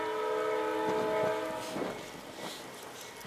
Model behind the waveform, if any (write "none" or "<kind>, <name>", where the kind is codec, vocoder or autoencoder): none